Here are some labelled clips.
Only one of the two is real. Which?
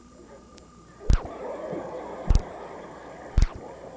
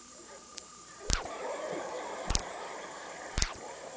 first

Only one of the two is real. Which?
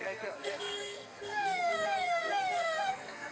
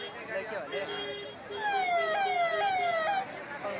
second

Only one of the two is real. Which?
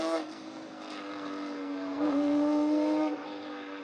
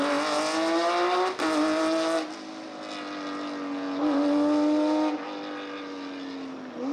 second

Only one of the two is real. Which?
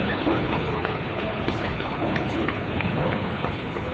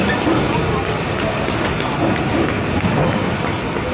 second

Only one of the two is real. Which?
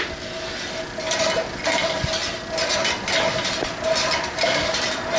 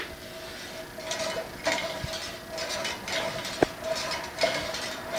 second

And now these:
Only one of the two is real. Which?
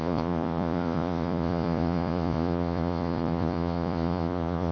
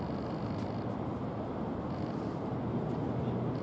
second